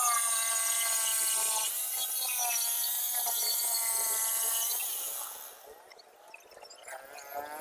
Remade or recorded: recorded